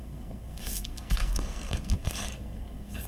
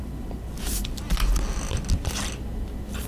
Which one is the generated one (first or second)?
first